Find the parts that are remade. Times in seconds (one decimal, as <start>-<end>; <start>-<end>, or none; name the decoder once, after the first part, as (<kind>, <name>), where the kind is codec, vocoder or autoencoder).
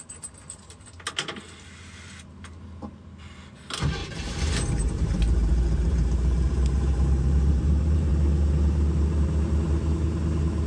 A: 4.0-8.1 (vocoder, BigVGAN v2)